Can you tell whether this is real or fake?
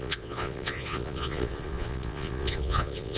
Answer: fake